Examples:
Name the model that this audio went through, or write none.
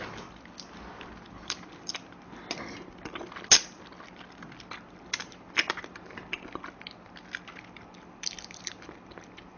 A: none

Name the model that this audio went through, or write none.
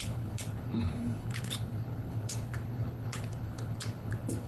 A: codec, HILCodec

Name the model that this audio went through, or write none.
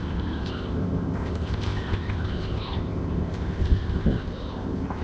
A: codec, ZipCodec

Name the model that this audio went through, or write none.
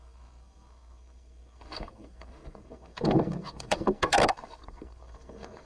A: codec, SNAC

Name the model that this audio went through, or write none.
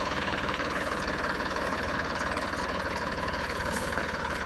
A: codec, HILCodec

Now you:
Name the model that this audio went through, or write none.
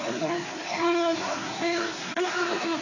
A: codec, SNAC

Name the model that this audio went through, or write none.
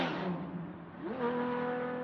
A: none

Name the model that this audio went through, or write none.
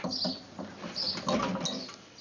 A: none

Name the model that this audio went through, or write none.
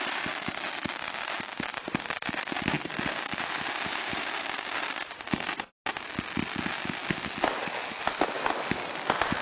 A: none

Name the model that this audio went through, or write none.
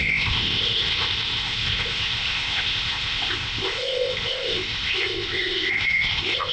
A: codec, ZipCodec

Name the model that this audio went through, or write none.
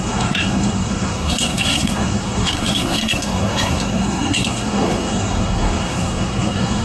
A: codec, SNAC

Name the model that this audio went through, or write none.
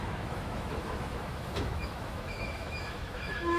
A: autoencoder, DAC-VAE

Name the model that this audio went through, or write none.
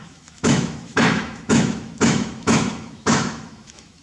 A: autoencoder, DAC-VAE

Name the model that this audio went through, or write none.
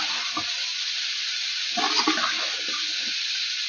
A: none